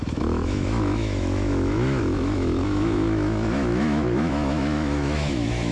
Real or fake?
fake